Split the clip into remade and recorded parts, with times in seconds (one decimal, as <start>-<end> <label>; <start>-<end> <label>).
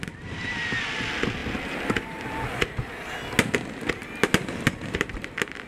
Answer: 0.0-1.4 recorded; 1.4-2.2 remade; 2.2-5.7 recorded